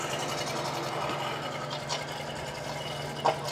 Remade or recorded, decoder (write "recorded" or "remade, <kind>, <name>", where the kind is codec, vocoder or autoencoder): recorded